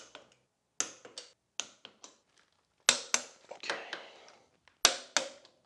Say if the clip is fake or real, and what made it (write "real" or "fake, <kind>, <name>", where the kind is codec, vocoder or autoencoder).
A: real